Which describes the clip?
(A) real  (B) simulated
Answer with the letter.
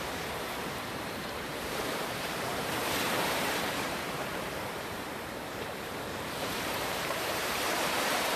B